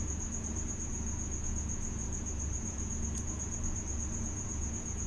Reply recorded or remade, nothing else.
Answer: remade